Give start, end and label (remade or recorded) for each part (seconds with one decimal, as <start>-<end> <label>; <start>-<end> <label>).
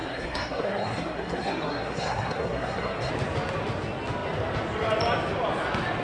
0.0-3.1 remade; 3.1-6.0 recorded